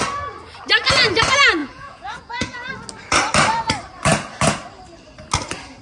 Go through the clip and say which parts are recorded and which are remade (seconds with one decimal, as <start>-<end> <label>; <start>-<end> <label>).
0.0-1.6 recorded; 1.6-2.7 remade; 2.7-5.8 recorded